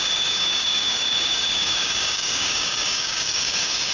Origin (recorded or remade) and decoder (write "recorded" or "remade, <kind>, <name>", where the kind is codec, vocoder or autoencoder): remade, codec, DAC